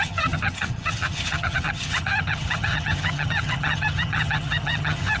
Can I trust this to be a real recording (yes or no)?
no